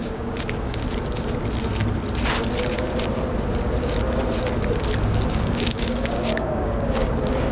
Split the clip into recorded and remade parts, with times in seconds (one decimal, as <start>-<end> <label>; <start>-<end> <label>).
0.0-0.8 remade; 0.8-5.3 recorded; 5.3-7.5 remade